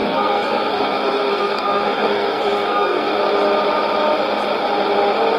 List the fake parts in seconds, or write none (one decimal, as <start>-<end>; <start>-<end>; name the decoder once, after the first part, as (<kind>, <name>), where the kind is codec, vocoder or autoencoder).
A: 0.0-3.2 (codec, SNAC)